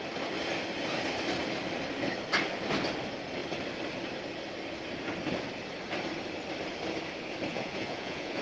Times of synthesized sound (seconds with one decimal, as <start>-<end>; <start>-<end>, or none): 7.5-8.4